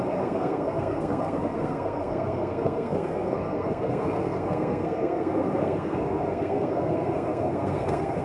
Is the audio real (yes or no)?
no